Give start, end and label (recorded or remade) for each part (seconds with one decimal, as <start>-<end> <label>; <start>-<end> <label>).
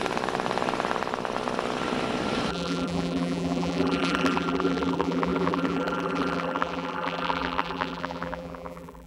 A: 0.0-2.5 recorded; 2.5-9.1 remade